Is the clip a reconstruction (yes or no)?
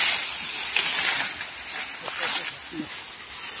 no